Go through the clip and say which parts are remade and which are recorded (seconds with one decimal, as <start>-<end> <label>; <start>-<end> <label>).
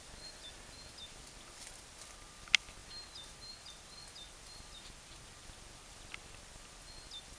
0.0-7.4 recorded